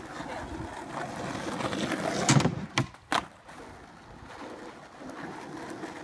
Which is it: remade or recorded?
recorded